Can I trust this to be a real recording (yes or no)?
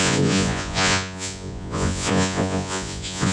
no